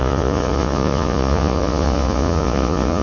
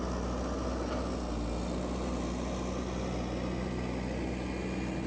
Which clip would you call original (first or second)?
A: second